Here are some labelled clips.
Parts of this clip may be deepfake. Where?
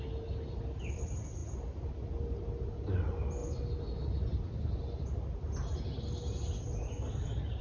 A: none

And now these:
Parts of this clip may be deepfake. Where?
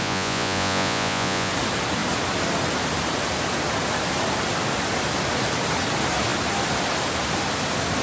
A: 0.0-1.5 (vocoder, Vocos)